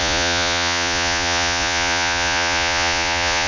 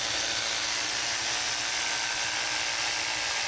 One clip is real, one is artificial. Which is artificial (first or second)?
first